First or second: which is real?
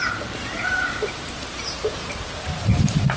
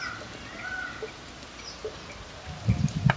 second